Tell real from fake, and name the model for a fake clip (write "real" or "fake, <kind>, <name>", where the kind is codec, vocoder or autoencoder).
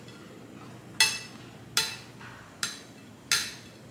real